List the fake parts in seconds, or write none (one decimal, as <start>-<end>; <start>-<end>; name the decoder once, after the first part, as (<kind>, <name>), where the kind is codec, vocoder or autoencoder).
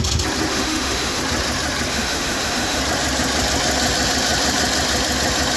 0.5-1.2 (autoencoder, DAC-VAE); 1.9-2.8